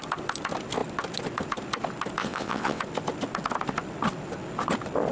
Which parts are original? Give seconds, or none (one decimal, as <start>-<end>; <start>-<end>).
0.0-2.2; 2.8-5.1